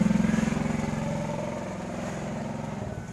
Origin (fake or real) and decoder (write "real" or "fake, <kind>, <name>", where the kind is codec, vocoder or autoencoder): real